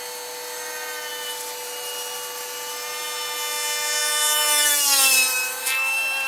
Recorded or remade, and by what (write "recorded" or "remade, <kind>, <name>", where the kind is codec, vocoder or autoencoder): recorded